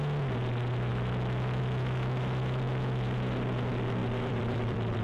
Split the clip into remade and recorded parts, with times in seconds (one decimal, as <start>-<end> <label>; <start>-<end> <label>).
0.0-4.0 recorded; 4.0-5.0 remade